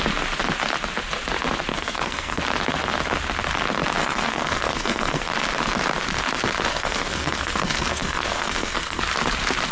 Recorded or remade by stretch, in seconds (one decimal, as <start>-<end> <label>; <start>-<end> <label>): 0.0-1.7 recorded; 1.7-2.4 remade; 2.4-4.0 recorded; 4.0-5.3 remade; 5.3-6.7 recorded; 6.7-9.0 remade; 9.0-9.7 recorded